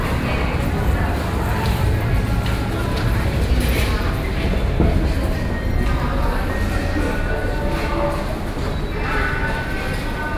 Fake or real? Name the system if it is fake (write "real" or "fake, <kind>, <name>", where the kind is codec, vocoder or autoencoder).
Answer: real